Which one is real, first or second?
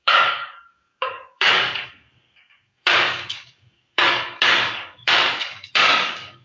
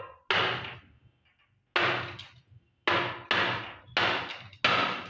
second